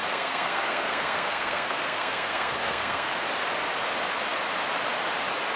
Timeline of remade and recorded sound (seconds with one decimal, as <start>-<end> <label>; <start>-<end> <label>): 0.0-3.1 remade; 3.1-5.6 recorded